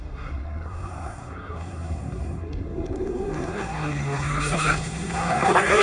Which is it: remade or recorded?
remade